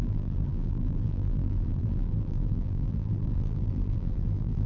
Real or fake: fake